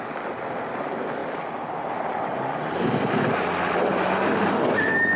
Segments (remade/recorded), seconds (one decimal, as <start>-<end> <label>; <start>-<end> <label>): 0.0-5.2 recorded